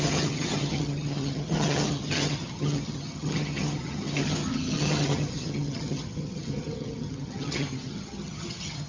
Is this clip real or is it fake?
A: fake